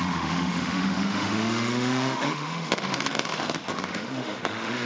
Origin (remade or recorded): remade